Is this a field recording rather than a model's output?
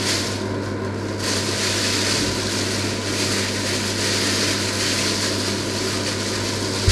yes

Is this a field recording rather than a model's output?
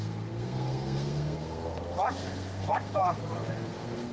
no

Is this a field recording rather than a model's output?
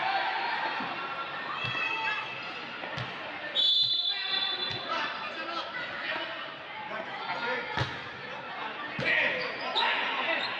yes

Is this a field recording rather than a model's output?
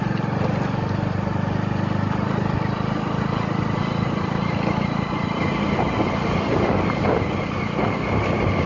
yes